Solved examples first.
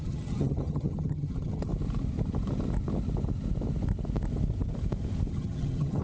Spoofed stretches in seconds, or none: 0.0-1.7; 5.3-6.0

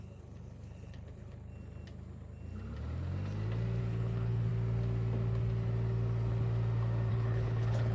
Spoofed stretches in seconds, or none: 0.0-1.5; 3.8-4.5; 7.1-7.9